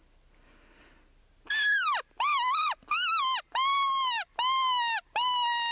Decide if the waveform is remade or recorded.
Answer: recorded